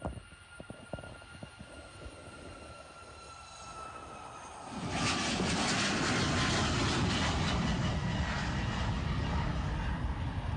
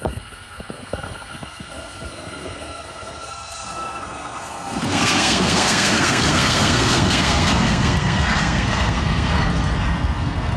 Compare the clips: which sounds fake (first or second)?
second